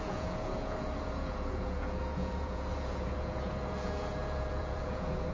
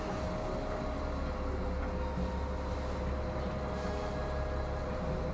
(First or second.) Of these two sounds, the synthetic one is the first